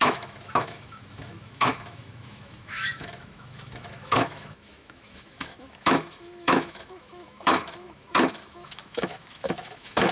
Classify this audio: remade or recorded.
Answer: remade